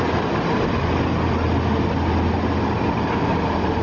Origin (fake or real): real